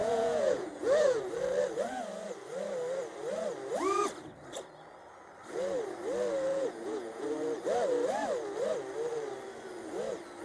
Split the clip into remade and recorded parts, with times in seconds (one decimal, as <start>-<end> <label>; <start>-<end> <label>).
0.0-1.2 remade; 1.2-6.5 recorded; 6.5-7.2 remade; 7.2-10.4 recorded